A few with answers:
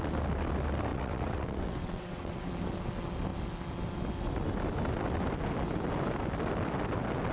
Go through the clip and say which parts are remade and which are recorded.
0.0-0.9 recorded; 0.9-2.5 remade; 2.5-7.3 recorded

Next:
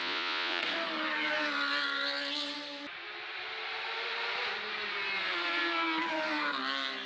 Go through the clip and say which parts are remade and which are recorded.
0.0-0.6 remade; 0.6-7.1 recorded

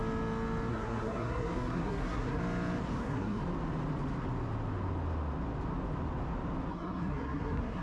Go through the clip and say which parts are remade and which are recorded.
0.0-0.7 recorded; 0.7-2.4 remade; 2.4-3.0 recorded; 3.0-3.4 remade; 3.4-6.7 recorded; 6.7-7.8 remade

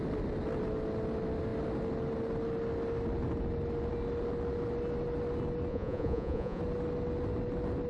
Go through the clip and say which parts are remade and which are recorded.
0.0-5.7 recorded; 5.7-6.6 remade; 6.6-7.9 recorded

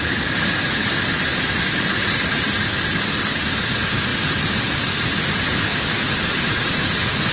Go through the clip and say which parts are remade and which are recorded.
0.0-7.3 recorded

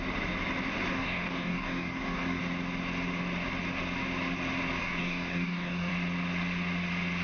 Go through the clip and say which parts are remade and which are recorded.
0.0-0.9 recorded; 0.9-2.4 remade; 2.4-4.8 recorded; 4.8-5.9 remade; 5.9-7.2 recorded

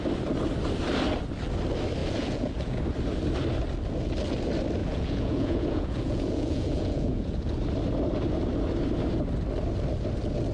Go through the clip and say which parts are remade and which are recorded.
0.0-2.0 recorded; 2.0-2.8 remade; 2.8-4.8 recorded; 4.8-7.5 remade; 7.5-10.5 recorded

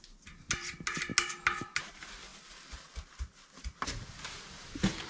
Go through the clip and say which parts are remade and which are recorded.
0.0-5.1 recorded